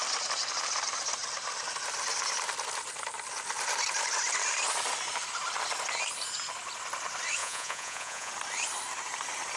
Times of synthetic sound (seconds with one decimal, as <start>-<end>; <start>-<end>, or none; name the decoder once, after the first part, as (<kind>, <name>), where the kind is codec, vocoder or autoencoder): 7.4-8.3 (vocoder, Vocos)